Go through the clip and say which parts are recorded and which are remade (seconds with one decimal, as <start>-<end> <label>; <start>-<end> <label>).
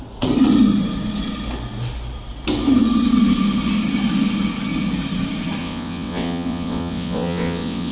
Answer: 0.0-5.6 recorded; 5.6-7.9 remade